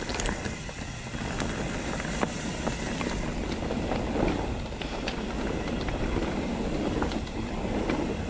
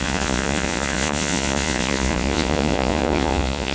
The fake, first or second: second